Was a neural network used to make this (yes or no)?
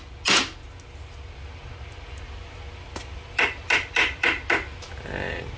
no